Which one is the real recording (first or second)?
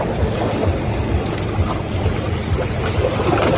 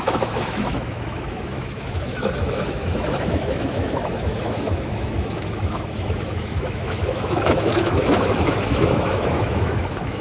first